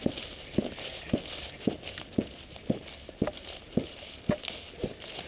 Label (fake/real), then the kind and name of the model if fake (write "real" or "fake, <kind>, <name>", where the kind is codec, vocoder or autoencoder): real